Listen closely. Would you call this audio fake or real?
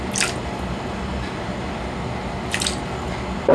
real